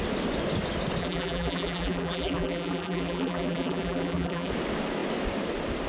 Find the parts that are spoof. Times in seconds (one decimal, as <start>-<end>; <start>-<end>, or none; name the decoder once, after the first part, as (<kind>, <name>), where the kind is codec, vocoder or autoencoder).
1.0-4.5 (vocoder, BigVGAN v2)